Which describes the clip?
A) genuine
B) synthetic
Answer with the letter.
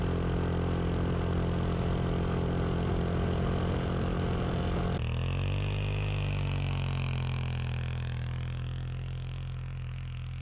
A